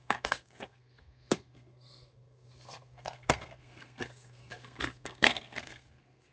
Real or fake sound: fake